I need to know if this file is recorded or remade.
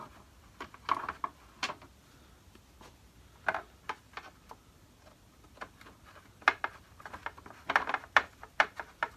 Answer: recorded